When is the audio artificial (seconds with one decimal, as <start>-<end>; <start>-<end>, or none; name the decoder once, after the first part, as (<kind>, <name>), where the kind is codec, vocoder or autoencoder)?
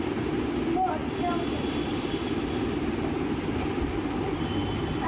none